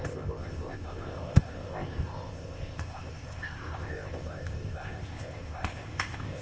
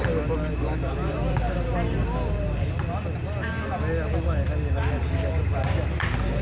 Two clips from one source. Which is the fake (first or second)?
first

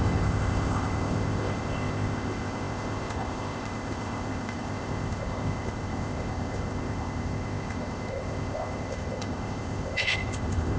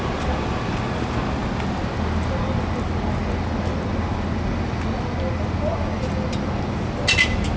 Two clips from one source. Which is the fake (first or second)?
first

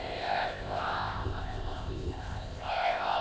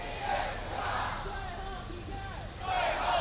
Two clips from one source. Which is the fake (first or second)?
first